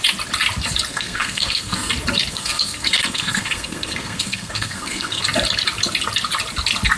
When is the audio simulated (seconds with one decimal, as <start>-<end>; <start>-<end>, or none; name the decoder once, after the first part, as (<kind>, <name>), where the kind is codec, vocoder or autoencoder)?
0.9-1.9 (codec, SNAC); 2.3-5.2